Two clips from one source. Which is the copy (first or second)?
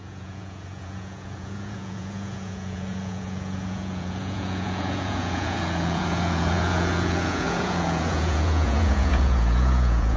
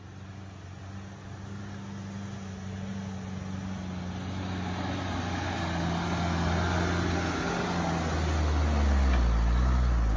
first